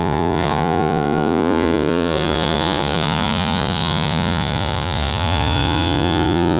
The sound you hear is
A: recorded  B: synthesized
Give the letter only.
B